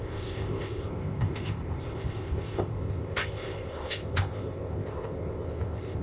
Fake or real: fake